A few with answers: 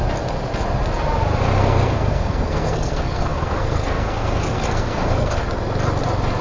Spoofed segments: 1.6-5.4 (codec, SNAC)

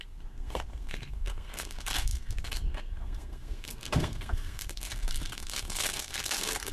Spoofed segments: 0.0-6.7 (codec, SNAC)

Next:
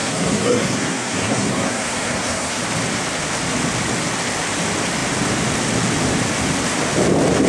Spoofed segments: 0.0-2.6 (codec, SNAC)